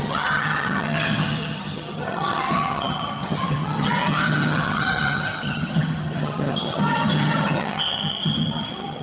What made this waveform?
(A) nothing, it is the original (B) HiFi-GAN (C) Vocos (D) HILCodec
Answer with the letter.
B